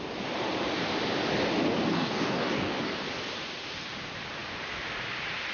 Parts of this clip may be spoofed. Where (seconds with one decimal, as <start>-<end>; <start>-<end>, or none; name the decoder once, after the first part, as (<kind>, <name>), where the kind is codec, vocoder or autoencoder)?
1.9-2.9 (codec, DAC)